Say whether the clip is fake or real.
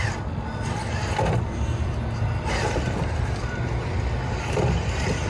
real